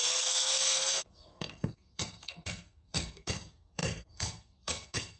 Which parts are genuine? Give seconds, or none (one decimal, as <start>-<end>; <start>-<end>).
none